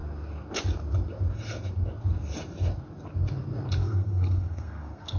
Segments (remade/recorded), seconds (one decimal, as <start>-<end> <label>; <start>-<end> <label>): 0.0-3.8 recorded; 3.8-5.2 remade